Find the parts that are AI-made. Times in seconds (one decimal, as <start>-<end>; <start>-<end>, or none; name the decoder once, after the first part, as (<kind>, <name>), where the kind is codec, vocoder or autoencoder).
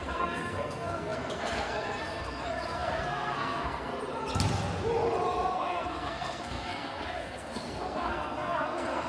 0.0-3.9 (codec, SNAC); 5.5-9.1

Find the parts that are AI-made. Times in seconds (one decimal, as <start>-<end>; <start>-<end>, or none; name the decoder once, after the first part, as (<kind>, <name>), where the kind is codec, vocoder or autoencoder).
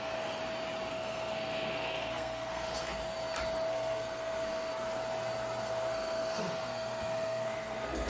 0.0-0.4 (codec, SNAC); 0.9-3.0; 3.7-4.7; 5.6-8.1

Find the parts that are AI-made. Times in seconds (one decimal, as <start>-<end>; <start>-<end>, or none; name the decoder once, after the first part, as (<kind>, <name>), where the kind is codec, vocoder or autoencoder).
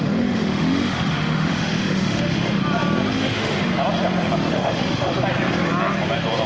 0.0-2.6 (autoencoder, DAC-VAE); 3.2-3.7; 4.5-5.1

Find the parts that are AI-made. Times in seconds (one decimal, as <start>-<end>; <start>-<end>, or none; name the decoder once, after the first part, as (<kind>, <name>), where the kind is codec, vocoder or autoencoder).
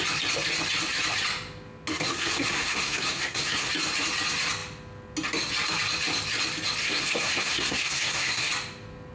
1.9-3.7 (codec, SNAC); 6.8-8.5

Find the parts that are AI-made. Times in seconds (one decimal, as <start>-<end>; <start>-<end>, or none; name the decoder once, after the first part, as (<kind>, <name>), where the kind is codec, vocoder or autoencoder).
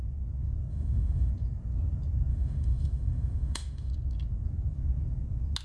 0.7-1.3 (autoencoder, DAC-VAE); 2.3-3.9